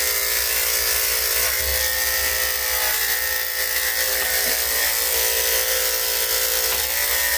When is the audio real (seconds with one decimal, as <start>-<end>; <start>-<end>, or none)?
0.0-7.4